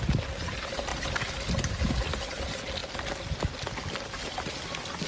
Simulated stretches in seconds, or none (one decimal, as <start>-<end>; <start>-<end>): none